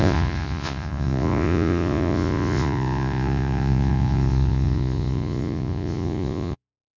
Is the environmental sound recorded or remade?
remade